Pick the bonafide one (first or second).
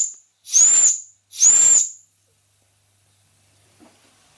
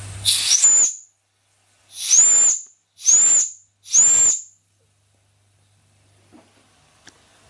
second